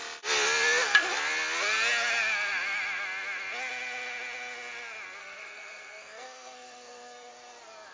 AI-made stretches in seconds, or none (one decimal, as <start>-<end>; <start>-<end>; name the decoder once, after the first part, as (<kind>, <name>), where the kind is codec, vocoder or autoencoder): 5.2-7.3 (codec, SNAC)